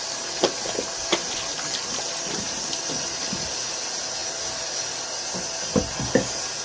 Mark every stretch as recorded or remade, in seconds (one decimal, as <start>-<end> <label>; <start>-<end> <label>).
0.0-6.6 recorded